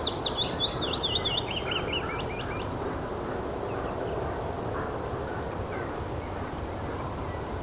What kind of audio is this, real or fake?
real